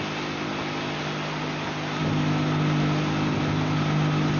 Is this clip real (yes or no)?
yes